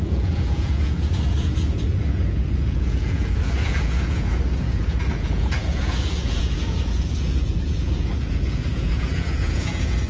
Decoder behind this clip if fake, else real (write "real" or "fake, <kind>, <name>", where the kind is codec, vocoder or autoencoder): fake, vocoder, Vocos